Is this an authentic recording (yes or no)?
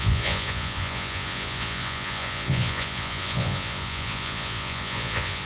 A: no